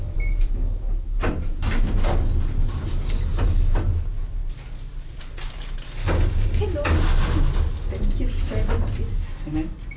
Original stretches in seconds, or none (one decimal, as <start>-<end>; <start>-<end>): 0.0-6.0; 6.6-10.0